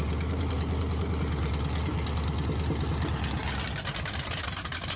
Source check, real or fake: real